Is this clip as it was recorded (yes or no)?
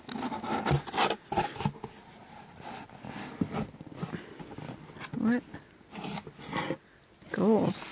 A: yes